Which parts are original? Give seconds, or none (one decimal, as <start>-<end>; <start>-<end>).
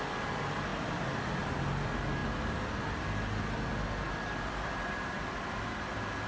0.0-6.3